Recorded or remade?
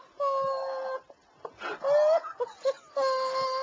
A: recorded